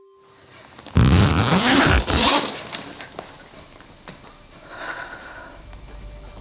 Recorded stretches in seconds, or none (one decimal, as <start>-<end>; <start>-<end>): 0.0-6.4